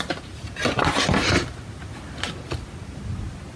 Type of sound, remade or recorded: recorded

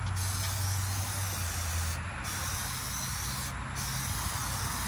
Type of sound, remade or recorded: recorded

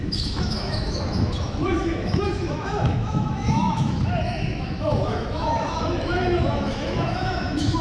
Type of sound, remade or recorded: remade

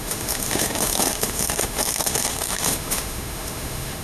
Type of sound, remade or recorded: remade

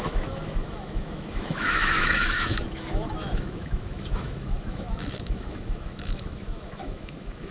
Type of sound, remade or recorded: remade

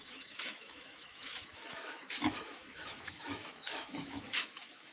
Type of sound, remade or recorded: remade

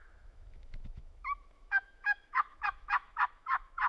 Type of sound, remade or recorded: remade